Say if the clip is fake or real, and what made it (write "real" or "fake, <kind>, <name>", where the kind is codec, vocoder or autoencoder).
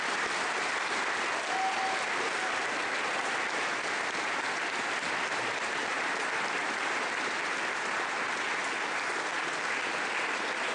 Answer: real